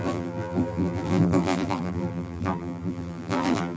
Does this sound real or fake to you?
fake